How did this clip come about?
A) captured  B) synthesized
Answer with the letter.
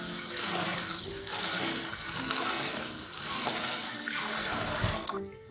B